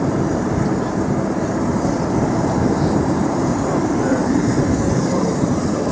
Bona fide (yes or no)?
no